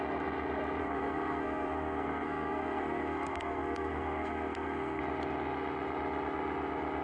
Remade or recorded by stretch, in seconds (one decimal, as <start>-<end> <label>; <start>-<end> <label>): 0.0-0.8 recorded; 0.8-5.0 remade; 5.0-7.0 recorded